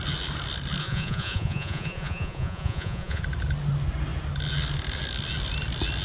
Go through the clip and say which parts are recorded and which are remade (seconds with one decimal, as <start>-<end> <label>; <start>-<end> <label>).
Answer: 0.0-0.8 recorded; 0.8-3.2 remade; 3.2-6.0 recorded